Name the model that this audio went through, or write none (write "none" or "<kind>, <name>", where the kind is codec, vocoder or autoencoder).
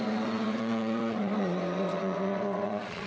vocoder, Vocos